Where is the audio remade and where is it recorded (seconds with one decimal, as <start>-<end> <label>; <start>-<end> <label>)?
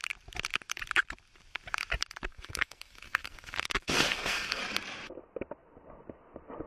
0.0-2.3 recorded; 2.3-4.6 remade; 4.6-6.7 recorded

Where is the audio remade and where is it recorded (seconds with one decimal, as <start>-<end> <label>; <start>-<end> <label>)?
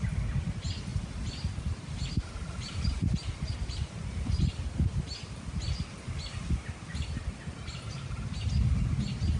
0.0-9.4 recorded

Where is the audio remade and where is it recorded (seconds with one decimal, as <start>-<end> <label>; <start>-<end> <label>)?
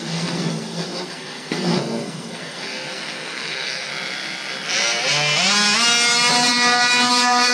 0.0-3.9 remade; 3.9-7.1 recorded; 7.1-7.5 remade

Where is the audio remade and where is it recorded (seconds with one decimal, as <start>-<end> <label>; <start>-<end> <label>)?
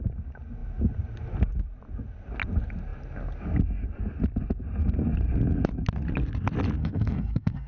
0.0-6.8 recorded; 6.8-7.7 remade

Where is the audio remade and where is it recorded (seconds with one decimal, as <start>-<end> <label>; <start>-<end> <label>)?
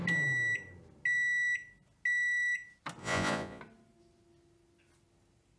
0.0-3.0 recorded; 3.0-3.6 remade; 3.6-5.6 recorded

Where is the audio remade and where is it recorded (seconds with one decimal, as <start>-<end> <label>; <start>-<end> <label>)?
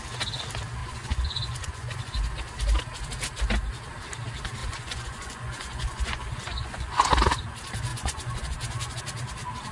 0.0-0.8 recorded; 0.8-2.3 remade; 2.3-4.6 recorded; 4.6-7.1 remade; 7.1-7.9 recorded; 7.9-9.0 remade; 9.0-9.7 recorded